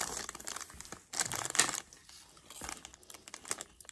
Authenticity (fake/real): real